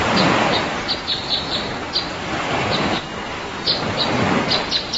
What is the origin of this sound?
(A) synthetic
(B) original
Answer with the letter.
B